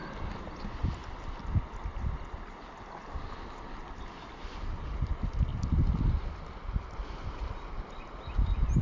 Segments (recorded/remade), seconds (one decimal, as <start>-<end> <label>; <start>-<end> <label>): 0.0-8.8 recorded